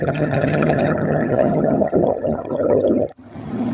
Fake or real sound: fake